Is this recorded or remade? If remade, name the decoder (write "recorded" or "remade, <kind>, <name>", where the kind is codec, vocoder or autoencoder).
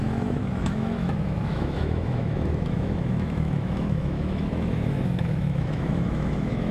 remade, autoencoder, DAC-VAE